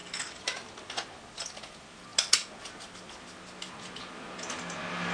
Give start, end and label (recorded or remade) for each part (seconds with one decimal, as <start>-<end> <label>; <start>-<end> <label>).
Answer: 0.0-5.1 recorded